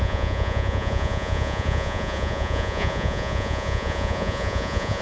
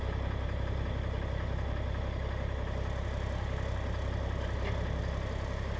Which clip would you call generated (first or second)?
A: first